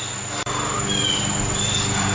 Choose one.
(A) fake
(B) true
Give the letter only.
B